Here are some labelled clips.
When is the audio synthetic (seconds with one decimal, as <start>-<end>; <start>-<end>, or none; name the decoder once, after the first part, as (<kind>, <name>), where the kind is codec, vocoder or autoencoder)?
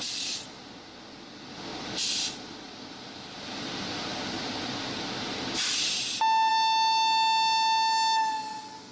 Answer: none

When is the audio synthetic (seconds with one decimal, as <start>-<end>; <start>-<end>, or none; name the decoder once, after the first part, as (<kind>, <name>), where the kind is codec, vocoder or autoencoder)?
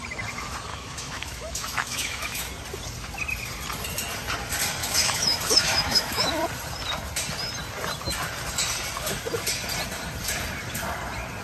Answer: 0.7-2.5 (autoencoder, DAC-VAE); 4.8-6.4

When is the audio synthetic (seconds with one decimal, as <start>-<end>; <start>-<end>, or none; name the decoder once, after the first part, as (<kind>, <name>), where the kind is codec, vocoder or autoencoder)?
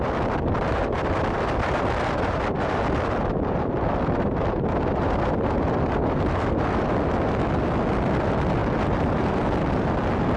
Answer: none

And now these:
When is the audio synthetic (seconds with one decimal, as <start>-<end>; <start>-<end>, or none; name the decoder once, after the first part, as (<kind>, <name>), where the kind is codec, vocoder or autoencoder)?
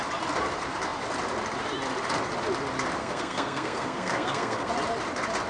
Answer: 3.0-4.7 (codec, SNAC)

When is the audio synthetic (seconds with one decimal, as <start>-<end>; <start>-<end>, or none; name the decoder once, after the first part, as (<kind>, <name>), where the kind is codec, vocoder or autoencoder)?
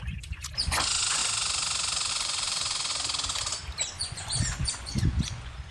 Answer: 0.0-1.2 (vocoder, Vocos); 2.1-2.9; 3.8-5.7